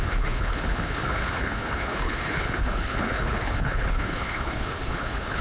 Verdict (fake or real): fake